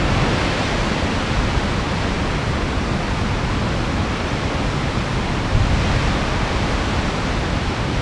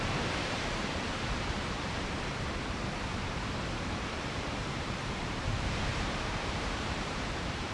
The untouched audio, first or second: first